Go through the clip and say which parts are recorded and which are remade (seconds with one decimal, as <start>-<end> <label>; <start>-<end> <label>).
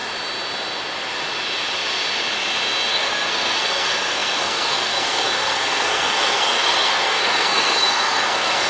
0.0-2.9 recorded; 2.9-8.7 remade